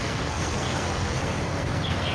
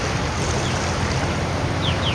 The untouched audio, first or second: second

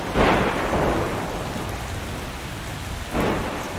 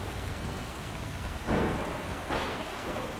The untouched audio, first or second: first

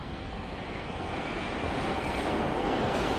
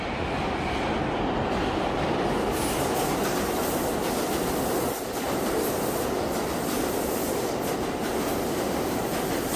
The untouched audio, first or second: second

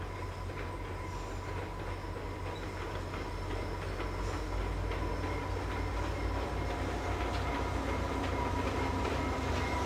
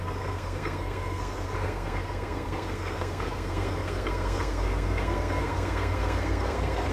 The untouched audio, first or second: first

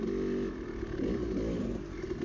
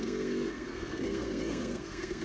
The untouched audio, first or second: first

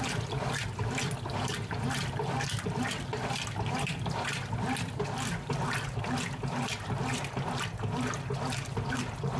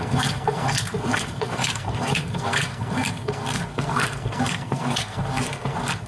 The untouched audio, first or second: first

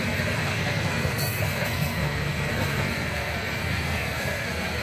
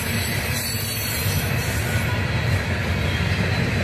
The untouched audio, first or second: second